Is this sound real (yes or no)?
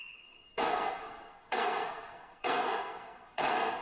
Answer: no